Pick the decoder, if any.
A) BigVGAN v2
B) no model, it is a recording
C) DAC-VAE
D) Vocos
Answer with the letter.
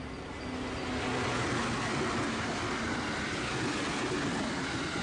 B